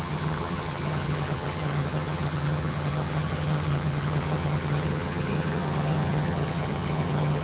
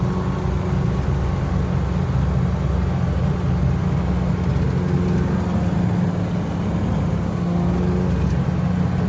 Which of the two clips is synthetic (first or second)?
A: first